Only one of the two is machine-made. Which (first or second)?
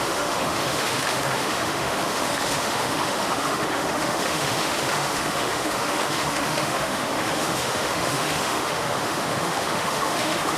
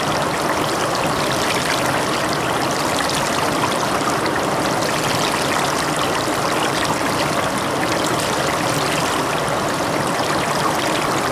first